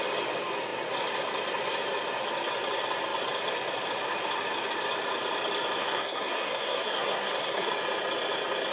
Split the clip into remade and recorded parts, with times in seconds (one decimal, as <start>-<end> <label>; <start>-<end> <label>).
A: 0.0-5.8 recorded; 5.8-7.7 remade; 7.7-8.7 recorded